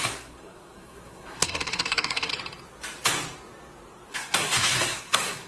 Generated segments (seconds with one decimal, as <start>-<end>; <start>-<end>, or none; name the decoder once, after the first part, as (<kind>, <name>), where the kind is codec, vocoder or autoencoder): 0.0-2.3 (codec, SNAC); 4.1-5.5